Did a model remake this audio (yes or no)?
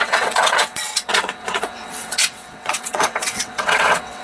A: yes